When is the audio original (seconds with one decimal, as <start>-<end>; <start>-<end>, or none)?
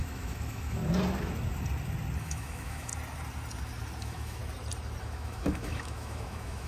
0.8-2.2; 2.9-4.0; 4.4-5.0